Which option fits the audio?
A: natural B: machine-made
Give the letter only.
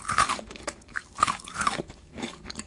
B